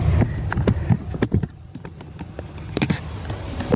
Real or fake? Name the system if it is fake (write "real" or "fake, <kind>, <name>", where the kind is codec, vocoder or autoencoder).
fake, vocoder, BigVGAN v2